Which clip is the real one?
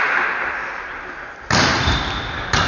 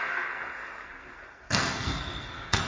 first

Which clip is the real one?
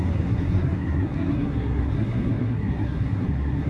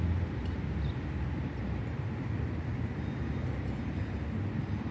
second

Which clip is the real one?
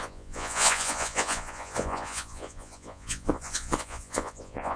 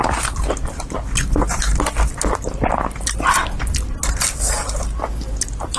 second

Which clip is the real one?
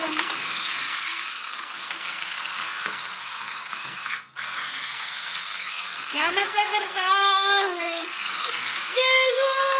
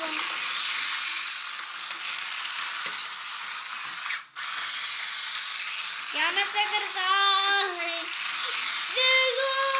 second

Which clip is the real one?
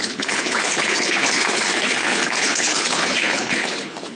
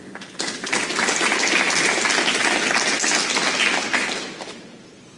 second